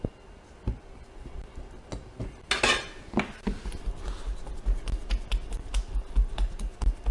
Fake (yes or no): no